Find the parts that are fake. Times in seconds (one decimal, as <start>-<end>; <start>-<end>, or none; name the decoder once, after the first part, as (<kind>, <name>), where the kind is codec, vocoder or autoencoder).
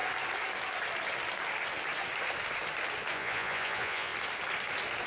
3.1-4.1 (vocoder, Vocos)